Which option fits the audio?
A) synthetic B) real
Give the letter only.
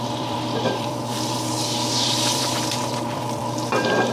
A